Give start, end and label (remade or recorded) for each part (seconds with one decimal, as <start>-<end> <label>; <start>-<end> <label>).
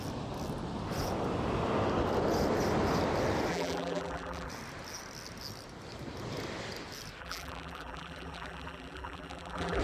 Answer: 0.0-3.5 recorded; 3.5-4.5 remade; 4.5-7.2 recorded; 7.2-9.8 remade